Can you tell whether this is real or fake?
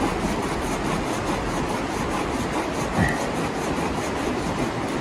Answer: real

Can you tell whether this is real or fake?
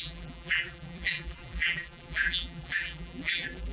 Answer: fake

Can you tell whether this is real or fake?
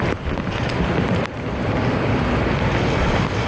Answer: real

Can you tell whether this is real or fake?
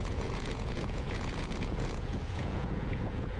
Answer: fake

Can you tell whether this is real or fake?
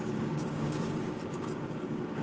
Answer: fake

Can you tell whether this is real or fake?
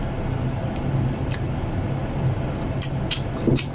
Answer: real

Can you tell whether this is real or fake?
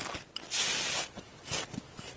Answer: real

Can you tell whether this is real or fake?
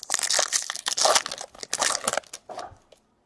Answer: real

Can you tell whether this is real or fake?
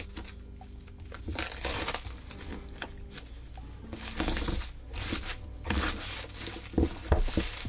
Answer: real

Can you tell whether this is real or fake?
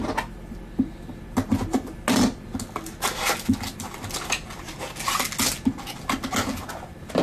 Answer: real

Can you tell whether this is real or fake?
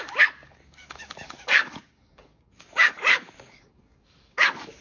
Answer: fake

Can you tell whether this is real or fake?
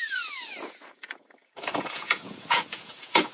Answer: fake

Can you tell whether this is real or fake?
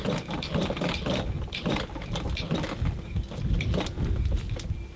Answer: real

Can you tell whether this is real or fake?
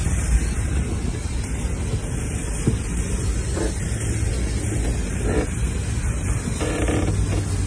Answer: real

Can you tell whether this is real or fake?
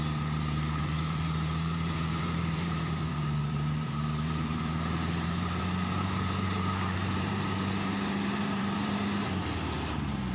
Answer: fake